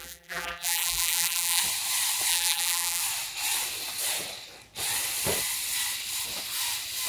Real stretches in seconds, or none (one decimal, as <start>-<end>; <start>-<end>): 1.6-2.3; 3.0-7.1